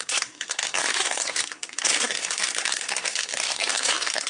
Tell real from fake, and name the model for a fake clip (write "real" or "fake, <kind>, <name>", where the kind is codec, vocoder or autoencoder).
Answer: fake, codec, SNAC